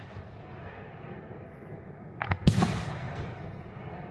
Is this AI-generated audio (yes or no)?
yes